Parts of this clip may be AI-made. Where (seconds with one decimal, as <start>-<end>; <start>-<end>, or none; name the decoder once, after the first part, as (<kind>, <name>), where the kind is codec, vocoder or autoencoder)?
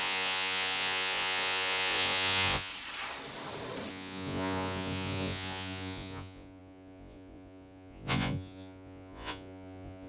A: 0.0-2.7 (vocoder, Vocos); 3.9-10.1